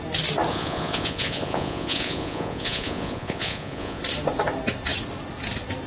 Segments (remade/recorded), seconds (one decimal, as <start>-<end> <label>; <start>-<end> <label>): 0.0-0.5 recorded; 0.5-4.0 remade; 4.0-5.9 recorded